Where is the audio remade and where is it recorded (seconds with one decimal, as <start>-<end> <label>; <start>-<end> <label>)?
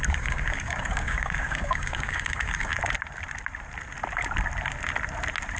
0.0-2.7 remade; 2.7-5.6 recorded